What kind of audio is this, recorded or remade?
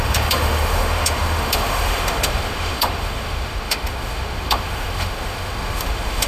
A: remade